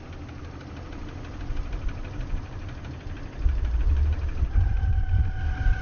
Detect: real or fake real